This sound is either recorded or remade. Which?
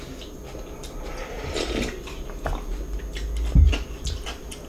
recorded